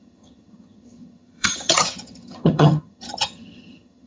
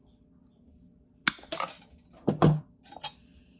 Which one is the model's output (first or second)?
first